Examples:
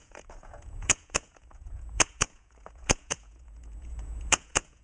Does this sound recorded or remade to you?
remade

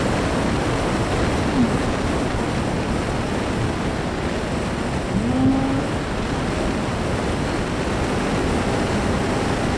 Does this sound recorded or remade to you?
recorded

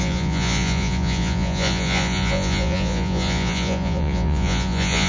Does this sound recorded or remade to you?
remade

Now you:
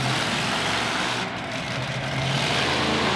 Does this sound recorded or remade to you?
recorded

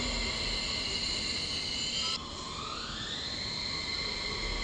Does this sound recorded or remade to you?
recorded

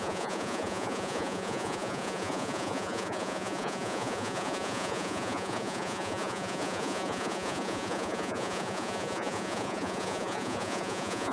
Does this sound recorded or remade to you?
remade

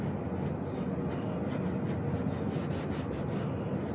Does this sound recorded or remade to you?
recorded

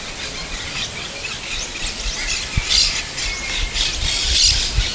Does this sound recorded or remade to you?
recorded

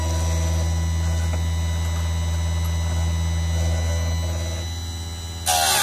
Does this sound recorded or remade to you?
recorded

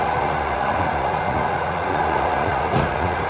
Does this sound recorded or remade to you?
remade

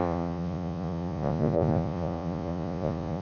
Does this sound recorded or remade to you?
remade